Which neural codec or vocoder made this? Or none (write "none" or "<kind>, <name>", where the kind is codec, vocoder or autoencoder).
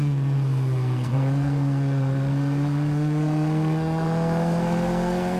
codec, SNAC